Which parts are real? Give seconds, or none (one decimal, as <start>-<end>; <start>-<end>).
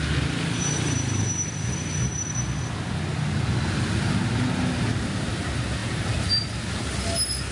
0.0-7.5